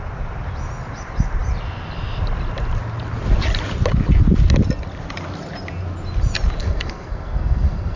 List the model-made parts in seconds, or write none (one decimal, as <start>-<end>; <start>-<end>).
6.6-8.0